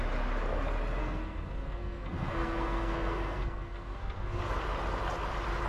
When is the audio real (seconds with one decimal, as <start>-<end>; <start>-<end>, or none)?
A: 0.0-1.0; 4.4-5.7